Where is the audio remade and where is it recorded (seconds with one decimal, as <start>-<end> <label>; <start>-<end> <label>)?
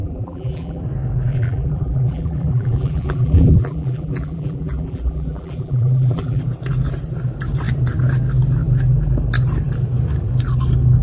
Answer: 0.0-0.8 remade; 0.8-1.3 recorded; 1.3-6.4 remade; 6.4-11.0 recorded